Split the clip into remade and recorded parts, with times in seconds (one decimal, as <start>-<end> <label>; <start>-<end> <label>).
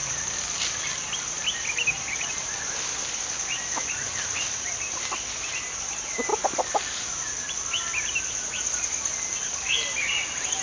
0.0-10.6 recorded